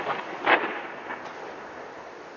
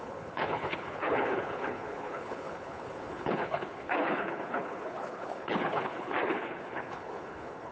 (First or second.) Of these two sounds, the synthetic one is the second